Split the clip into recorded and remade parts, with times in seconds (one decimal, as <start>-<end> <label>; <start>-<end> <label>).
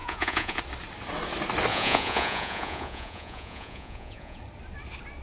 0.0-0.6 remade; 0.6-1.7 recorded; 1.7-4.4 remade; 4.4-5.2 recorded